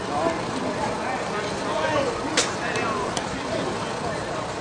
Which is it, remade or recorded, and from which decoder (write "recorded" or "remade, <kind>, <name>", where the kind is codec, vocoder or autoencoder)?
recorded